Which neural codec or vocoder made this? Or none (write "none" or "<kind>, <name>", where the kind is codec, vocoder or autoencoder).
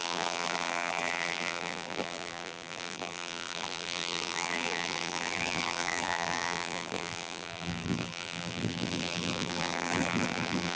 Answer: vocoder, BigVGAN v2